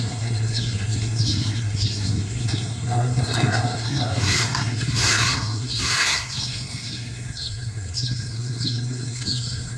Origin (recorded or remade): remade